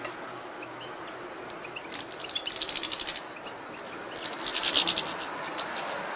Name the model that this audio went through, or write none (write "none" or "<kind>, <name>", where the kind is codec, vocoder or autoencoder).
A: none